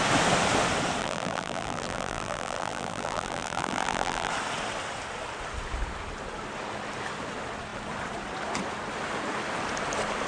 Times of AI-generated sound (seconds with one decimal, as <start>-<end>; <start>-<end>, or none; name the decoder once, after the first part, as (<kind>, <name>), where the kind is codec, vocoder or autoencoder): 1.0-4.3 (vocoder, BigVGAN v2)